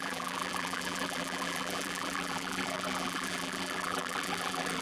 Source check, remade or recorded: remade